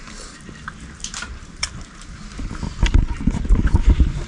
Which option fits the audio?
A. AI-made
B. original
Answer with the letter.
B